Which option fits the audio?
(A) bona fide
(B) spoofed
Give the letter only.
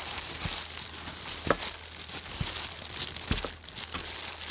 A